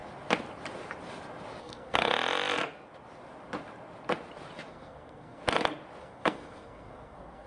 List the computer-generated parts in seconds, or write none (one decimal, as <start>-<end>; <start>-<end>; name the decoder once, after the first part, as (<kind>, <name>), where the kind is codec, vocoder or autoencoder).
1.6-2.1 (codec, SNAC); 4.7-5.4; 6.0-7.5